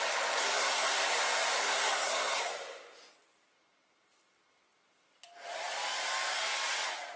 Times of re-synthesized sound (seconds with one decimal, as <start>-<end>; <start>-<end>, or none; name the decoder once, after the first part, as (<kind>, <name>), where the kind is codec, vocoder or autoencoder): 0.4-1.1 (codec, SNAC); 1.6-2.4